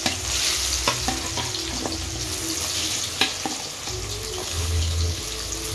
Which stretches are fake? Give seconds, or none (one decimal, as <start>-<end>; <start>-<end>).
4.4-5.2